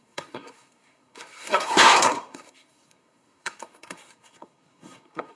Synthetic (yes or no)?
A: yes